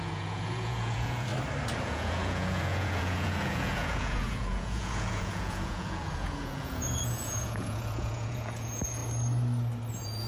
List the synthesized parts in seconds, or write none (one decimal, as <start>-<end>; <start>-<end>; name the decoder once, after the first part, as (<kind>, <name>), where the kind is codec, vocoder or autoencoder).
0.0-1.3 (vocoder, Vocos); 1.8-9.0; 9.9-10.3